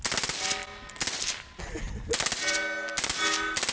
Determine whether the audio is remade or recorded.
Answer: recorded